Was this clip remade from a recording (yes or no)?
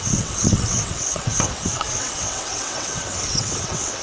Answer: yes